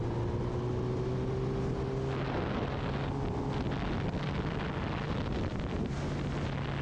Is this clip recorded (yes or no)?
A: yes